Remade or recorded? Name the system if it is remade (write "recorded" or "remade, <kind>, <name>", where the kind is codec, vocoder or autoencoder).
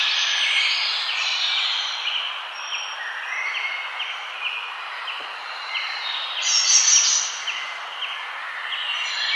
recorded